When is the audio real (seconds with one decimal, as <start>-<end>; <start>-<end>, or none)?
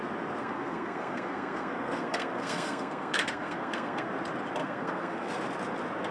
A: 0.0-0.4; 4.1-4.6; 5.3-6.1